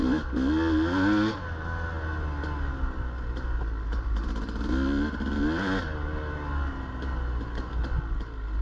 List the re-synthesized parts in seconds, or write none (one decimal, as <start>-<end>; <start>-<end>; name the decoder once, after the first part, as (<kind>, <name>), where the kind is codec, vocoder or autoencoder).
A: none